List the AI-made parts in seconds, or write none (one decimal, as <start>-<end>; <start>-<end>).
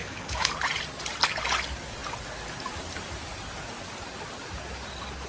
0.0-0.5